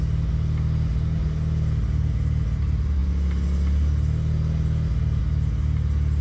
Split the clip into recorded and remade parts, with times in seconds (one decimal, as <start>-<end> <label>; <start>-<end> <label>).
0.0-6.2 recorded